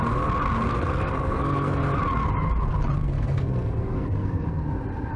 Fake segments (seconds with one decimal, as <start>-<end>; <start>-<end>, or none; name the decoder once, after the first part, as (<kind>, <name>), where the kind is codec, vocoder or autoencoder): 0.7-1.8 (codec, SNAC); 3.0-4.6